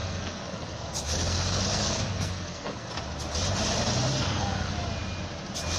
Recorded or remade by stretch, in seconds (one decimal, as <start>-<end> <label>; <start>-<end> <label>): 0.0-2.9 remade; 2.9-4.1 recorded; 4.1-4.7 remade; 4.7-5.8 recorded